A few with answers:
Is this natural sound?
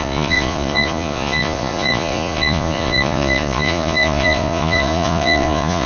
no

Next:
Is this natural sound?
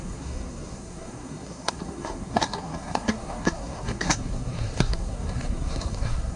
no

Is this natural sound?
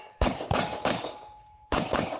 no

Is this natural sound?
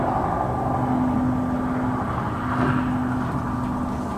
yes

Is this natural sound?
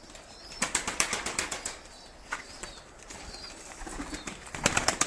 no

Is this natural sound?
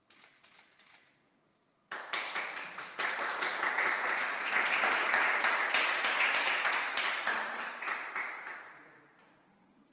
no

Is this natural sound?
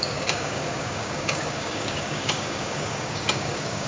no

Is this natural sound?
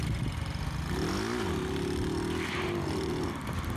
yes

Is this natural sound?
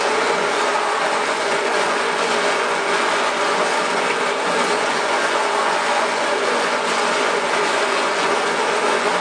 no